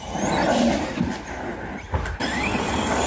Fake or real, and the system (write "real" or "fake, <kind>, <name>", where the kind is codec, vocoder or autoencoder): real